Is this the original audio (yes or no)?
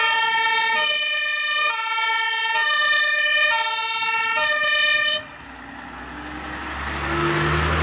yes